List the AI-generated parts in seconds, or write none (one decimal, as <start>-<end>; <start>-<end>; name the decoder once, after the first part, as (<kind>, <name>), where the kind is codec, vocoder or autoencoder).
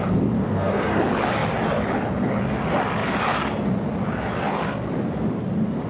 0.4-1.0 (codec, SNAC)